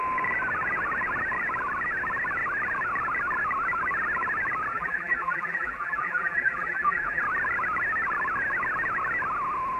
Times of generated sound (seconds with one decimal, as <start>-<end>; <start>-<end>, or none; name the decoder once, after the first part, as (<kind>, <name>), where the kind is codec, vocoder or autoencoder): 4.7-7.2 (vocoder, BigVGAN v2)